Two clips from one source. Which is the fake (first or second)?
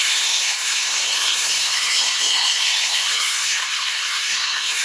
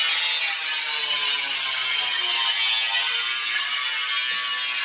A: first